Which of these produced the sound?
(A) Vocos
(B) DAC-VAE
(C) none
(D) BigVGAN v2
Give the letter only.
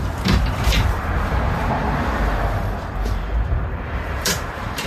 D